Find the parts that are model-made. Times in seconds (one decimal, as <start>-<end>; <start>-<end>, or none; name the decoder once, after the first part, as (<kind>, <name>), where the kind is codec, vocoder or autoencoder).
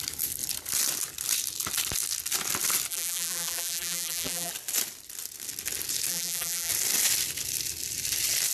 2.9-4.5 (vocoder, BigVGAN v2); 6.1-6.7